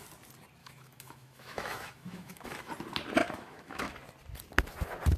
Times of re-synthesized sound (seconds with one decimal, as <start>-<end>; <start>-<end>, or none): 0.6-2.7; 3.2-3.9